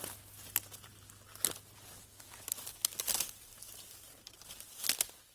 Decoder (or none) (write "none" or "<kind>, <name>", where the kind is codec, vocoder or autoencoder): none